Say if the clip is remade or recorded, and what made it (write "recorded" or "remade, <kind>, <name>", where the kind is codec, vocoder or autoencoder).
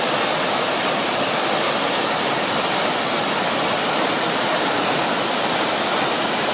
recorded